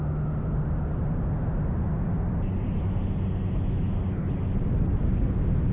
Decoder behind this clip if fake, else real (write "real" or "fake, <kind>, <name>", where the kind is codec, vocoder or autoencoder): real